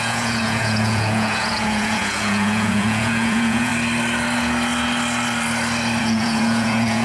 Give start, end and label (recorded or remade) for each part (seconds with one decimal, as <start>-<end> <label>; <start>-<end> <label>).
0.0-3.7 remade; 3.7-6.0 recorded; 6.0-7.0 remade